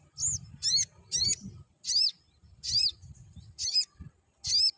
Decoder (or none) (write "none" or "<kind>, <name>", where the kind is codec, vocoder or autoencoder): none